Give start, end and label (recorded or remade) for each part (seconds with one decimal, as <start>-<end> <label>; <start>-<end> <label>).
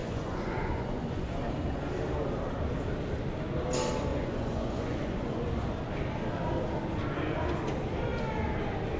0.0-1.3 remade; 1.3-4.1 recorded; 4.1-5.4 remade; 5.4-9.0 recorded